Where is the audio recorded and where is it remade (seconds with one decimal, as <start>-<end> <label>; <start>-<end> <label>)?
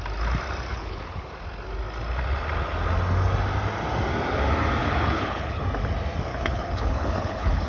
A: 0.0-0.7 recorded; 0.7-1.3 remade; 1.3-4.8 recorded; 4.8-5.6 remade; 5.6-6.3 recorded; 6.3-7.7 remade